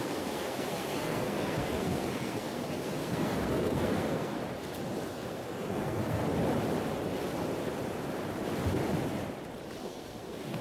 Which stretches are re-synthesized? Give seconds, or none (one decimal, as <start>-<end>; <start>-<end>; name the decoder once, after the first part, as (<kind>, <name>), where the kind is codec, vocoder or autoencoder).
0.0-4.4 (codec, SNAC); 5.1-6.2; 9.8-10.6